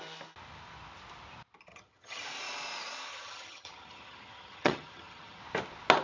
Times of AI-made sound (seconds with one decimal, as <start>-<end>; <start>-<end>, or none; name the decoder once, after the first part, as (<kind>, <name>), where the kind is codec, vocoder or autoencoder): 1.7-2.2 (vocoder, HiFi-GAN); 3.1-5.4